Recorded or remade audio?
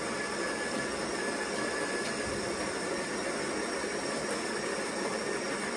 remade